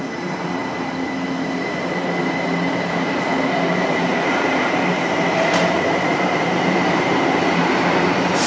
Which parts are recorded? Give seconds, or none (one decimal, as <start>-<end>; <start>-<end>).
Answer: 0.6-2.2